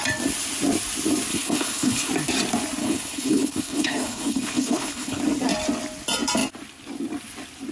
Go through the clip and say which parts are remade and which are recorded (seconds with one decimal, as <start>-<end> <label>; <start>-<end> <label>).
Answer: 0.0-1.3 recorded; 1.3-2.1 remade; 2.1-2.8 recorded; 2.8-5.2 remade; 5.2-7.7 recorded